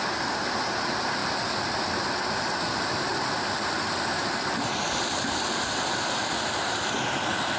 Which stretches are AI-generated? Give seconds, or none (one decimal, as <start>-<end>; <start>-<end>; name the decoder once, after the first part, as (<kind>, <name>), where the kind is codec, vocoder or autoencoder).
none